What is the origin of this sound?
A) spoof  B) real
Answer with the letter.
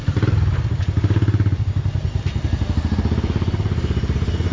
B